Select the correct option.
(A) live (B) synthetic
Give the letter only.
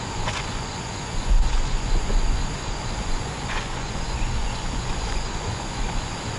B